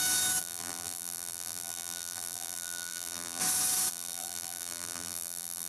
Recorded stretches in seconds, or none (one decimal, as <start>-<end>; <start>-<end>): 0.0-0.4; 3.4-3.9